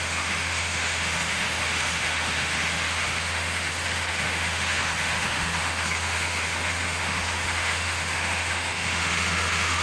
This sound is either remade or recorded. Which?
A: remade